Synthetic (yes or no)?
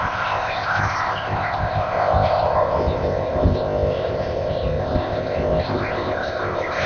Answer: yes